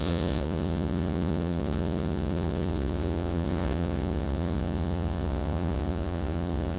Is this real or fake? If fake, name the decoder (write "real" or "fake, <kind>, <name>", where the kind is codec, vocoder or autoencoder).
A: fake, vocoder, Vocos